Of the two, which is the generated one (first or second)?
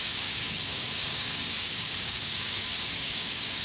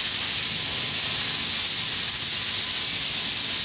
first